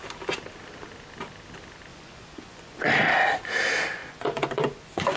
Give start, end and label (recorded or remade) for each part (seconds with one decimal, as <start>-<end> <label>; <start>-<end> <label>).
0.0-1.9 recorded; 1.9-2.9 remade; 2.9-4.0 recorded; 4.0-5.2 remade